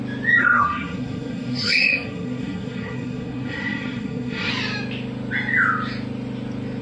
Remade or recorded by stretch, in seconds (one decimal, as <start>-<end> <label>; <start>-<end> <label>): 0.0-0.4 recorded; 0.4-4.5 remade; 4.5-6.8 recorded